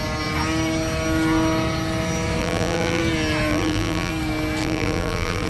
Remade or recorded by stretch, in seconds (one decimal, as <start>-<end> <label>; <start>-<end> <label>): 0.0-2.4 recorded; 2.4-3.0 remade; 3.0-3.5 recorded; 3.5-4.1 remade; 4.1-4.6 recorded; 4.6-5.5 remade